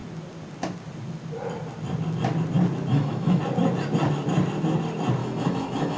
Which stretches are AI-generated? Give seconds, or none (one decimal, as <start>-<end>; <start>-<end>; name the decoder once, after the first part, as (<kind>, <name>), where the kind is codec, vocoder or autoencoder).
2.9-3.4 (autoencoder, DAC-VAE); 5.2-6.0